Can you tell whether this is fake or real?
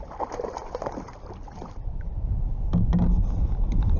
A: real